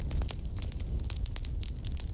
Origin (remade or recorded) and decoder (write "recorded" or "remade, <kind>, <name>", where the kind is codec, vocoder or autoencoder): recorded